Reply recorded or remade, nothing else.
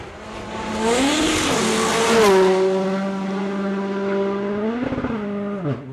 recorded